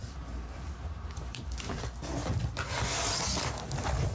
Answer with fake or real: real